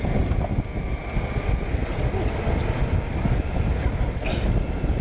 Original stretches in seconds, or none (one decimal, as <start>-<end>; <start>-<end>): 0.0-5.0